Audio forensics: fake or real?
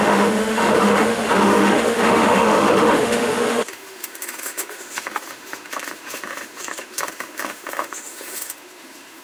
fake